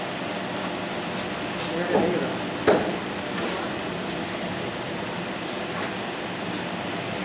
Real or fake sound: real